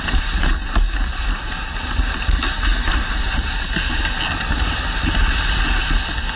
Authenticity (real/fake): real